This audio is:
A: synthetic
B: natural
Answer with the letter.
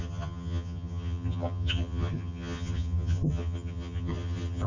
A